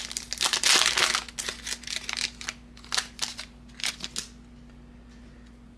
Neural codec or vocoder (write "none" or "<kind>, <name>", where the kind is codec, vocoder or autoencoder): none